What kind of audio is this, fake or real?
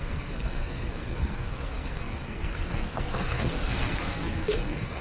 fake